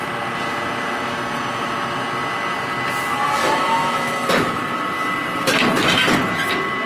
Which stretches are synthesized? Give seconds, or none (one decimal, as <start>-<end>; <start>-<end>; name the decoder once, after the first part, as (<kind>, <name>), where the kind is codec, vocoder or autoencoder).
3.4-4.3 (autoencoder, DAC-VAE)